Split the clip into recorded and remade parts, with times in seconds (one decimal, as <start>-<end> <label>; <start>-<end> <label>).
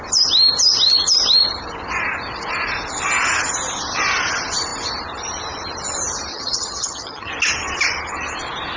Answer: 0.0-6.3 recorded; 6.3-7.3 remade; 7.3-8.8 recorded